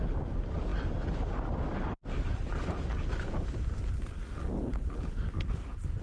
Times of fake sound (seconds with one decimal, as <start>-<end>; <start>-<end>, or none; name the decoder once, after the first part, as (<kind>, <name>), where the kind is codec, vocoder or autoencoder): none

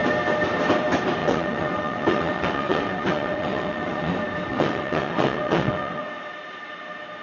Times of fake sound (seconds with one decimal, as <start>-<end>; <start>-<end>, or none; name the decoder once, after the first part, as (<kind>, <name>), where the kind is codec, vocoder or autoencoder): 1.2-4.1 (vocoder, WaveNeXt); 4.5-6.3